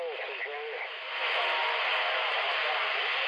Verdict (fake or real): real